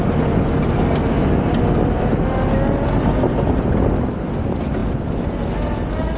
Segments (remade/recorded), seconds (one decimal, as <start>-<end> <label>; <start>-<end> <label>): 0.0-6.2 recorded

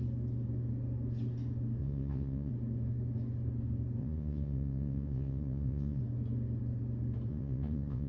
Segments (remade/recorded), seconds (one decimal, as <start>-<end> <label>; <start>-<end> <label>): 0.0-1.8 recorded; 1.8-2.5 remade; 2.5-4.0 recorded; 4.0-6.0 remade; 6.0-7.3 recorded; 7.3-8.1 remade

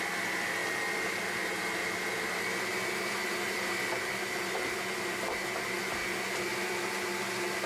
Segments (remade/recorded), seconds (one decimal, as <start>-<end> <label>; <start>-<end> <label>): 0.0-0.6 recorded; 0.6-1.4 remade; 1.4-1.8 recorded; 1.8-5.4 remade; 5.4-7.7 recorded

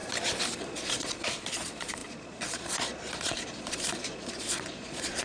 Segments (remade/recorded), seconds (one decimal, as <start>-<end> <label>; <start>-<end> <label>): 0.0-0.6 recorded; 0.6-5.2 remade

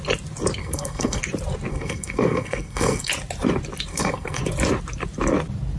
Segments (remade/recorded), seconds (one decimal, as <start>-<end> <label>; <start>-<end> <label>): 0.0-0.6 recorded; 0.6-1.2 remade; 1.2-1.7 recorded; 1.7-3.1 remade; 3.1-3.9 recorded; 3.9-4.4 remade; 4.4-5.8 recorded

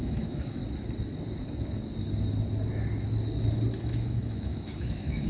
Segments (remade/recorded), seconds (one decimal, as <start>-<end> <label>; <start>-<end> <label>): 0.0-0.6 remade; 0.6-3.8 recorded; 3.8-5.3 remade

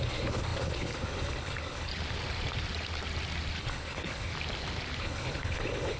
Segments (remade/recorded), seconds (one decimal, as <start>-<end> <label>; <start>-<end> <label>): 0.0-1.9 remade; 1.9-3.6 recorded; 3.6-4.3 remade; 4.3-5.0 recorded; 5.0-6.0 remade

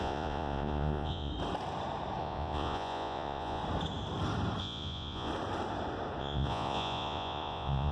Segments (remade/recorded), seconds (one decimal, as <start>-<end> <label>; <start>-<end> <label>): 0.0-1.3 remade; 1.3-2.2 recorded; 2.2-3.6 remade; 3.6-4.6 recorded; 4.6-5.3 remade; 5.3-6.2 recorded; 6.2-7.9 remade